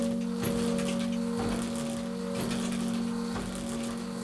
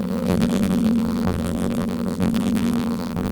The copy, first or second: second